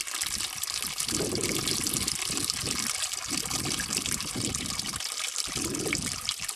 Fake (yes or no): no